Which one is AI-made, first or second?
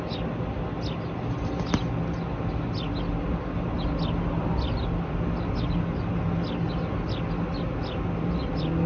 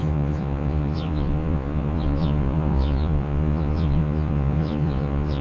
second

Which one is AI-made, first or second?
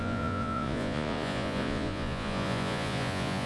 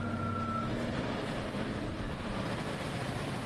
first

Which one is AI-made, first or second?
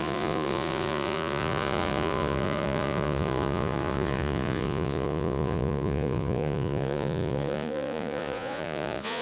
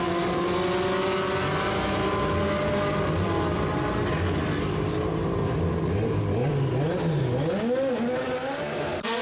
first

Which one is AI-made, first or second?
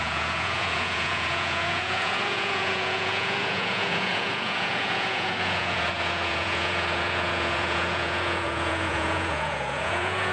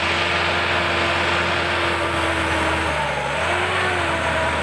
first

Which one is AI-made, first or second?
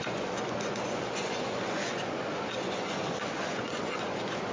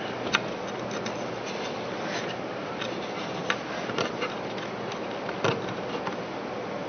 first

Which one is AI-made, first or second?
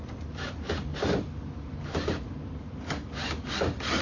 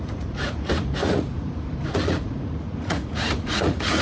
second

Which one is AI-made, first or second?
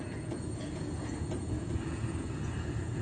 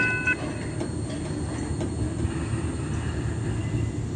first